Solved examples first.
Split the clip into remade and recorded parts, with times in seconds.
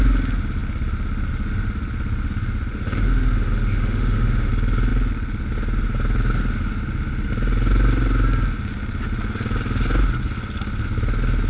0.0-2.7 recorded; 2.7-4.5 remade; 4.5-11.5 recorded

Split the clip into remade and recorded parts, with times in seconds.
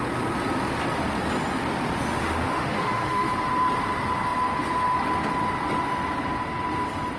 0.0-2.1 recorded; 2.1-3.3 remade; 3.3-7.2 recorded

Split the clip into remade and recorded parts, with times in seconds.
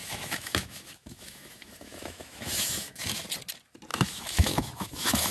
0.0-3.2 remade; 3.2-3.9 recorded; 3.9-5.3 remade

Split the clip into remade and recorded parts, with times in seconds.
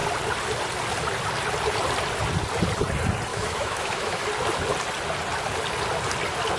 0.0-3.3 recorded; 3.3-4.2 remade; 4.2-6.6 recorded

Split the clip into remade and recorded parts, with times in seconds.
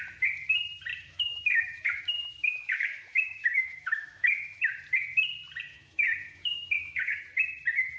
0.0-0.9 recorded; 0.9-2.0 remade; 2.0-2.4 recorded; 2.4-4.7 remade; 4.7-5.7 recorded; 5.7-7.2 remade; 7.2-8.0 recorded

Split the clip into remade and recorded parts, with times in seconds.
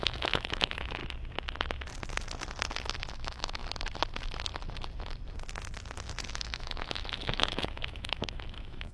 0.0-1.0 remade; 1.0-3.1 recorded; 3.1-3.6 remade; 3.6-6.4 recorded; 6.4-8.9 remade